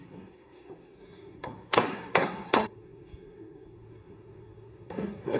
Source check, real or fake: fake